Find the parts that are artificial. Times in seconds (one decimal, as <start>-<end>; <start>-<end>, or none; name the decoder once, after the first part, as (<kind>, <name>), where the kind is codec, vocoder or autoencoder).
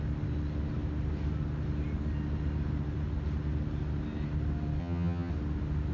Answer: 4.8-5.3 (vocoder, HiFi-GAN)